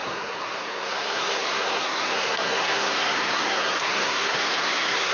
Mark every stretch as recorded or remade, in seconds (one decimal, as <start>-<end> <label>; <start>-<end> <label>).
0.0-5.1 remade